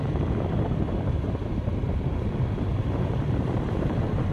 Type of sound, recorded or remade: remade